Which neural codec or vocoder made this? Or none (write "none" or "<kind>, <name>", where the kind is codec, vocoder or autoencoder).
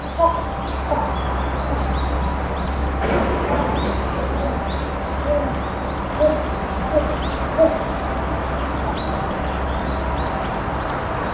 none